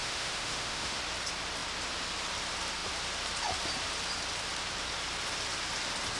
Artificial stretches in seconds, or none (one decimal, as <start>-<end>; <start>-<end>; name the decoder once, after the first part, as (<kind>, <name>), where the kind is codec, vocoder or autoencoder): 0.0-1.0 (autoencoder, DAC-VAE)